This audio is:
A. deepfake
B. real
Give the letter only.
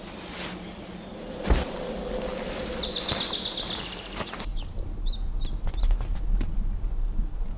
B